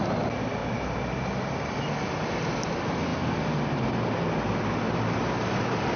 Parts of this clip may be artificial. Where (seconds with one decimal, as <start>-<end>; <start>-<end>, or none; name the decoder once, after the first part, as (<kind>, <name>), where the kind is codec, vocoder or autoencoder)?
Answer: 0.6-1.9 (vocoder, BigVGAN v2)